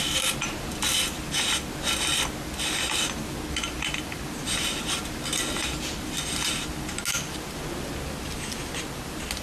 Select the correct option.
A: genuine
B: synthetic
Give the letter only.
A